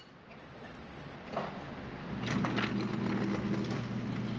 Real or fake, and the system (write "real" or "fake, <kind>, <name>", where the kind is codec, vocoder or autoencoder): real